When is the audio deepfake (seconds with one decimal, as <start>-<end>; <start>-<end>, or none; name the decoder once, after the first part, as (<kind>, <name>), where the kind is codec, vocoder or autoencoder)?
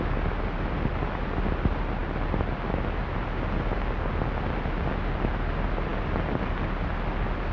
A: none